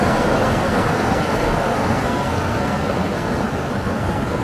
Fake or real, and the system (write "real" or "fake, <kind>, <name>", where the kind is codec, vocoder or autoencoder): fake, codec, SNAC